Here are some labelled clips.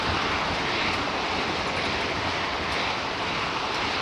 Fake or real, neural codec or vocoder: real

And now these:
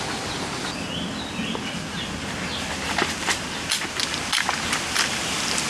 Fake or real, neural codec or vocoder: real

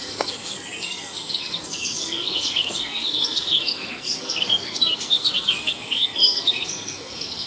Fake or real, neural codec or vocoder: fake, codec, SNAC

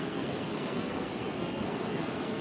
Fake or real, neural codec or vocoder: fake, codec, SNAC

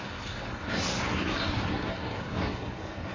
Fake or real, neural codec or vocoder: fake, codec, SNAC